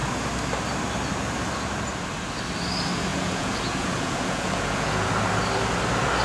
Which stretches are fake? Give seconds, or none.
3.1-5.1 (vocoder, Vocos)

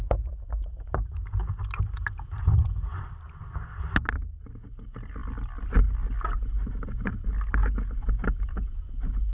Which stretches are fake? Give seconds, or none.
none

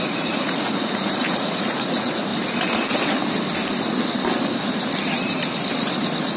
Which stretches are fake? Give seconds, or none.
0.0-2.3 (vocoder, Vocos)

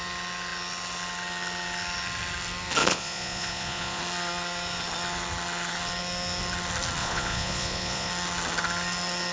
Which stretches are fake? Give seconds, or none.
2.8-4.0 (vocoder, Vocos); 7.0-8.1

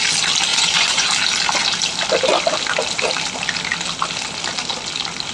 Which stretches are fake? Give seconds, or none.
0.5-1.1 (vocoder, Vocos)

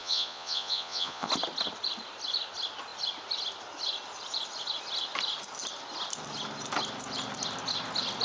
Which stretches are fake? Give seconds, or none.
0.0-1.3 (vocoder, Vocos)

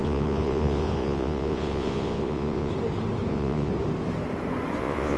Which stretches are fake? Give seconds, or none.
0.0-2.7 (vocoder, Vocos); 3.3-3.7; 4.8-5.2